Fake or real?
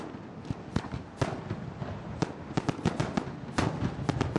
real